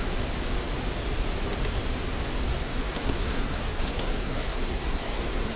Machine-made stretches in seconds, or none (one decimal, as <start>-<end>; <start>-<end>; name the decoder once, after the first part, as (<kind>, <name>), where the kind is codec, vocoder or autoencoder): 2.5-5.6 (codec, SNAC)